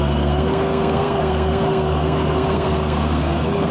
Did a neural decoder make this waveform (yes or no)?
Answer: yes